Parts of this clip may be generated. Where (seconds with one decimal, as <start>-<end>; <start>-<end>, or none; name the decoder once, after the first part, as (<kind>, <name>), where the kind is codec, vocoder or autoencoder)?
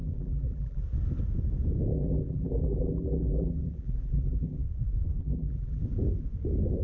0.0-0.8 (vocoder, BigVGAN v2); 1.9-4.7; 5.2-5.8